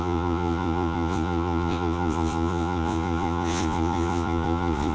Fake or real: fake